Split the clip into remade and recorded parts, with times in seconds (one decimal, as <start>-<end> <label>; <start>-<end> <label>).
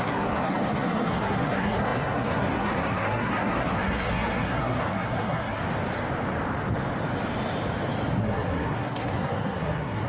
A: 0.0-5.6 remade; 5.6-8.2 recorded; 8.2-10.1 remade